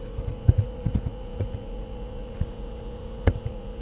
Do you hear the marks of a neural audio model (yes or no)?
yes